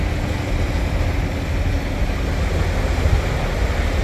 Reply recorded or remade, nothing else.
recorded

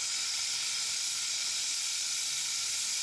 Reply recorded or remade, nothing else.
recorded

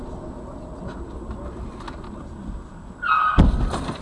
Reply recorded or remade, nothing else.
recorded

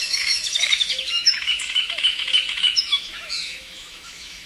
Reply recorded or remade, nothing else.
remade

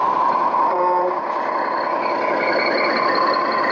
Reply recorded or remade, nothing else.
recorded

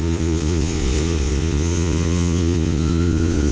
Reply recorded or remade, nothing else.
remade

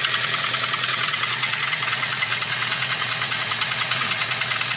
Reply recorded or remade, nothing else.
remade